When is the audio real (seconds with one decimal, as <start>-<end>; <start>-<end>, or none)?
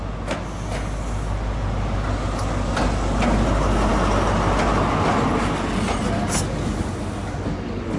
0.0-8.0